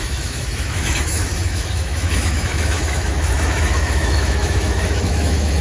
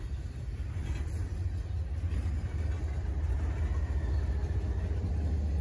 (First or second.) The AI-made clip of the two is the first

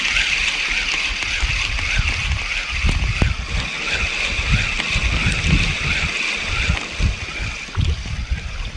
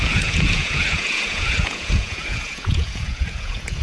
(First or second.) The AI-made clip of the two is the second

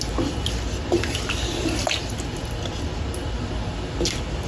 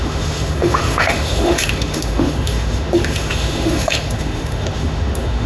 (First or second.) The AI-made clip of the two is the second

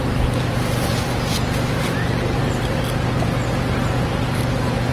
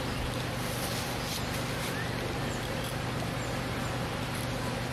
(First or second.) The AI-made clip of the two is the second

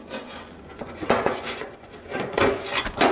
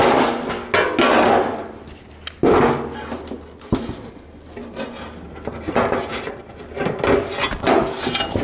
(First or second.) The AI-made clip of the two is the first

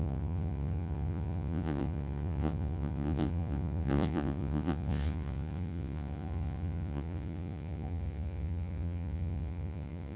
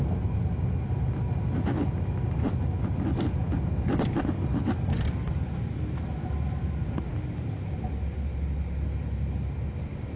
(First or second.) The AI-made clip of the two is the first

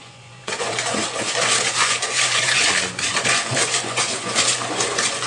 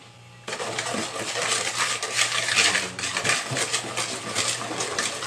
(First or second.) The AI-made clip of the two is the first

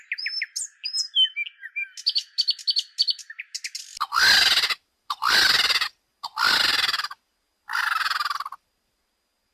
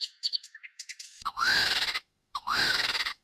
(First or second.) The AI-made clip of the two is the second